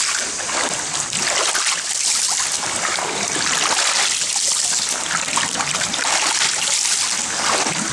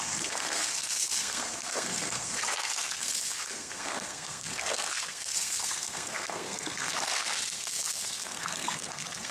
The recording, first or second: first